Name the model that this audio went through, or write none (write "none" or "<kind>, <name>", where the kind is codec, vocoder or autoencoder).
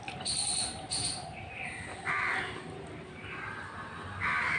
none